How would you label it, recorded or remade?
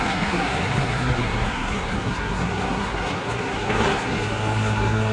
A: remade